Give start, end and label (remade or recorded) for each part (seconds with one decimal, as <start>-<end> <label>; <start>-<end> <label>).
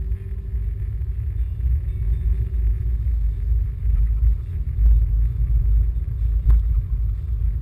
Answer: 0.0-7.6 recorded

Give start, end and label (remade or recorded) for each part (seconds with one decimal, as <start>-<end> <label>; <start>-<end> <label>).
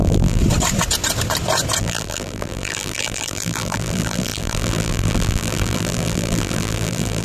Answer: 0.0-0.4 remade; 0.4-1.8 recorded; 1.8-7.2 remade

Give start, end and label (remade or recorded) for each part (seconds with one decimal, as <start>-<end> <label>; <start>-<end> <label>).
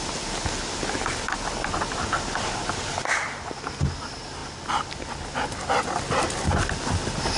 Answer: 0.0-7.4 recorded